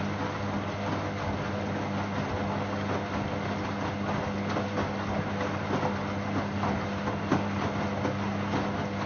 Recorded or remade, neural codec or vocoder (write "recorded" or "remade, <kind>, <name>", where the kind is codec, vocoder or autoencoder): recorded